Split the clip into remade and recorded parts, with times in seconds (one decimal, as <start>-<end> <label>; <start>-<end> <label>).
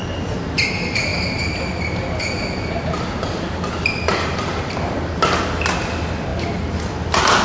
0.0-7.4 recorded